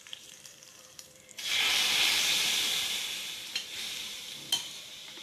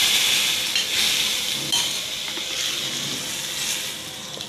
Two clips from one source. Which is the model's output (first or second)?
first